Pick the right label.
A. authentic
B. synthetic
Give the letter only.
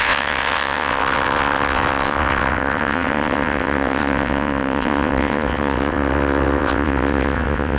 B